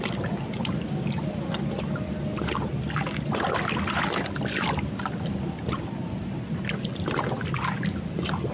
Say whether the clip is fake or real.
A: real